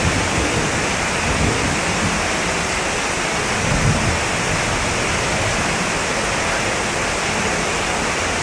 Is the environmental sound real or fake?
real